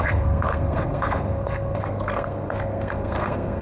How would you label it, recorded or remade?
remade